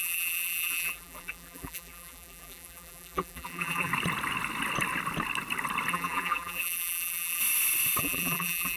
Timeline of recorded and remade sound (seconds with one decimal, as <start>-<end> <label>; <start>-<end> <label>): 0.0-3.9 remade; 3.9-5.9 recorded; 5.9-7.4 remade; 7.4-8.0 recorded; 8.0-8.8 remade

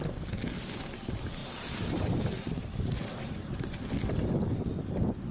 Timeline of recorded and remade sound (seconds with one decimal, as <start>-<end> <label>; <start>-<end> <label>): 0.0-1.4 recorded; 1.4-3.2 remade; 3.2-5.3 recorded

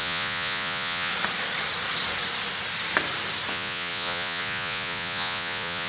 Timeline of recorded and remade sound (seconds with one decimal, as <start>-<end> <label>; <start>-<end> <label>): 0.0-1.1 remade; 1.1-3.5 recorded; 3.5-5.9 remade

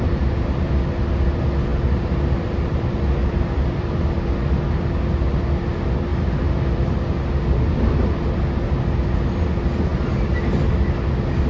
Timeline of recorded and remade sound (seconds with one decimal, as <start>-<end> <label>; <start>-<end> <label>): 0.0-1.7 recorded; 1.7-4.0 remade; 4.0-6.1 recorded; 6.1-7.0 remade; 7.0-11.5 recorded

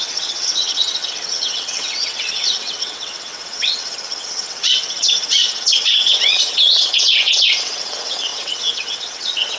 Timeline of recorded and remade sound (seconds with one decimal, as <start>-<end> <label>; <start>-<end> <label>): 0.0-9.6 remade

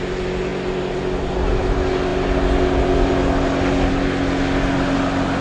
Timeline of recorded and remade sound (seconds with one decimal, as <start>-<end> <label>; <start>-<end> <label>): 0.0-5.4 recorded

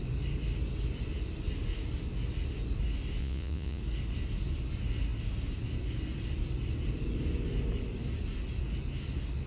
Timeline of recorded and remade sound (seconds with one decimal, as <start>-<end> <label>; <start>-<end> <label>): 0.0-3.2 recorded; 3.2-3.8 remade; 3.8-9.5 recorded

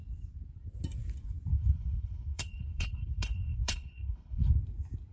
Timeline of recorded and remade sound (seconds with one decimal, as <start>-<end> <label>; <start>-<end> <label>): 0.0-1.5 recorded; 1.5-4.6 remade; 4.6-5.1 recorded